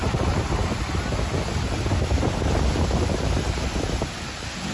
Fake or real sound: real